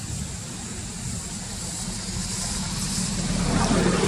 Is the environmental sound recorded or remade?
recorded